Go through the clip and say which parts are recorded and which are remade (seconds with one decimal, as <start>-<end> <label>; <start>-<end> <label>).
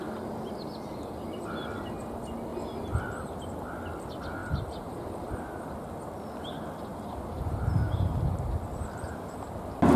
0.0-4.4 recorded; 4.4-4.9 remade; 4.9-6.9 recorded; 6.9-8.1 remade; 8.1-10.0 recorded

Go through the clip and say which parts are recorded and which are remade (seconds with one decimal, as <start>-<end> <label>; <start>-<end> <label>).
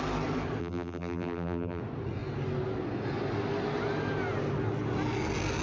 0.0-0.6 recorded; 0.6-1.8 remade; 1.8-5.6 recorded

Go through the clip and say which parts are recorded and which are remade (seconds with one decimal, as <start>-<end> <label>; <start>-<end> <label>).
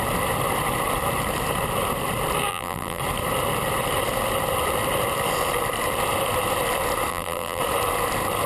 0.0-2.5 recorded; 2.5-3.0 remade; 3.0-7.1 recorded; 7.1-7.6 remade; 7.6-8.5 recorded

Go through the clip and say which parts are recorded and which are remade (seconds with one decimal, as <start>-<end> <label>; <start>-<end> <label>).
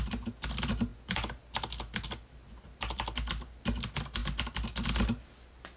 0.0-5.8 recorded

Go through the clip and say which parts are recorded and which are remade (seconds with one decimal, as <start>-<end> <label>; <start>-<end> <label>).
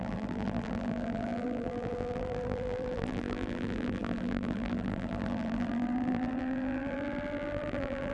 0.0-8.1 remade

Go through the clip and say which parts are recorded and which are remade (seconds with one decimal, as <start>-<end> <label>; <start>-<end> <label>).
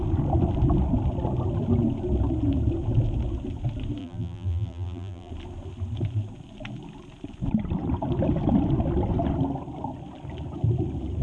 0.0-4.0 recorded; 4.0-5.3 remade; 5.3-11.2 recorded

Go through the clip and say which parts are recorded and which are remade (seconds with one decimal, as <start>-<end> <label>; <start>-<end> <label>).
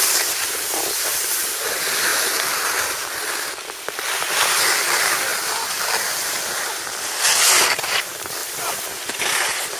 0.0-2.1 remade; 2.1-3.9 recorded; 3.9-5.3 remade; 5.3-7.7 recorded; 7.7-9.8 remade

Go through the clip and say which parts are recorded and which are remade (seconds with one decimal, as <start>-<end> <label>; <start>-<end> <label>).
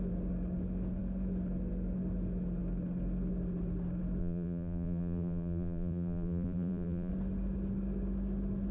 0.0-4.2 recorded; 4.2-7.1 remade; 7.1-8.7 recorded